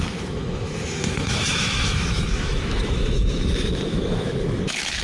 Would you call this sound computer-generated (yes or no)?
yes